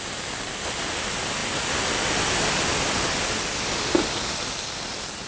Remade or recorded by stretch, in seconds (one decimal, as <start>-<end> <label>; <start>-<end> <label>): 0.0-5.3 recorded